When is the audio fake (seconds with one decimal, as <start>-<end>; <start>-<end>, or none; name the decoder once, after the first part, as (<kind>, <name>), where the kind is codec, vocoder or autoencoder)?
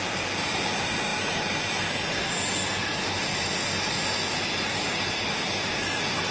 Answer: none